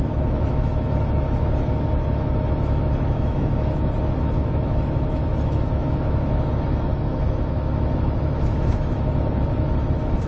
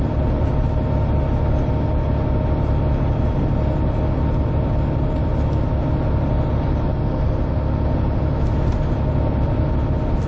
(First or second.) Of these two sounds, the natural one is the second